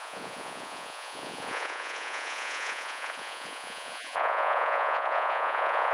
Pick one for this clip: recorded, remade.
remade